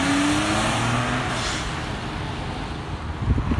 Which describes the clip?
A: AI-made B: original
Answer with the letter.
B